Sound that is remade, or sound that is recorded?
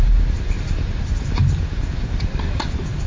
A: remade